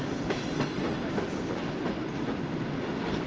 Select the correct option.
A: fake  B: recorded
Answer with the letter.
A